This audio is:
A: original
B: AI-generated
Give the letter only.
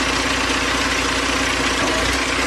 A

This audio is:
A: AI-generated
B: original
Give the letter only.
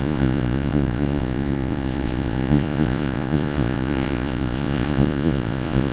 A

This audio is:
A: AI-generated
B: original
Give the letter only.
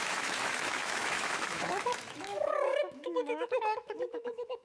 A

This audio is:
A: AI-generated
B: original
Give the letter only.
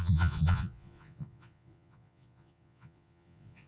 A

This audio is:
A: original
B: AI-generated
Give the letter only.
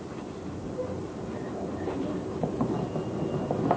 A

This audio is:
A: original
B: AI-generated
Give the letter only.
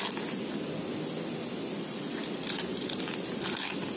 A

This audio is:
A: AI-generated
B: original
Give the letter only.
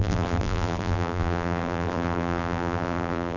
A